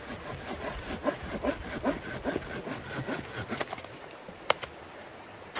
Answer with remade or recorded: recorded